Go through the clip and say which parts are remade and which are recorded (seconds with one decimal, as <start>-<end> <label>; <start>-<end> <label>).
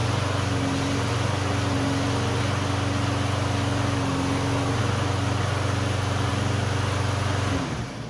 0.0-8.1 recorded